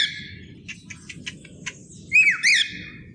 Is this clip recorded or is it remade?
recorded